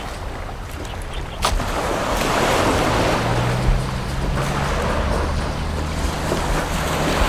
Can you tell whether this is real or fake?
real